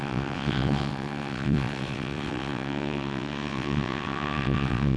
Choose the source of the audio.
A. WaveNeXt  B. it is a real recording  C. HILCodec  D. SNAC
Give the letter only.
A